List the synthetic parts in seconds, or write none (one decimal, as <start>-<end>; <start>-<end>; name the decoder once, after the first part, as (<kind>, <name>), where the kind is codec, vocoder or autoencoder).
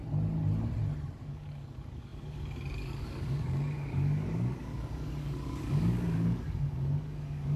1.2-7.6 (codec, DAC)